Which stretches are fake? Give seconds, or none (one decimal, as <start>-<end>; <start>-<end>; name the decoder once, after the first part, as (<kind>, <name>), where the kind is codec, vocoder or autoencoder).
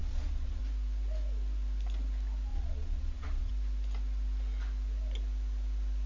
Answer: 0.0-0.6 (vocoder, Vocos); 2.5-3.5